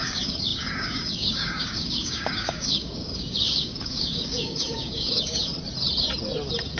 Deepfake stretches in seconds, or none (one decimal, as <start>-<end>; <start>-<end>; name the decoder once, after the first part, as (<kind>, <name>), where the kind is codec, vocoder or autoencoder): 0.0-5.5 (codec, DAC)